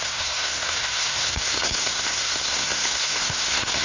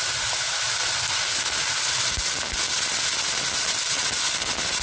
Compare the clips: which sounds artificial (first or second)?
first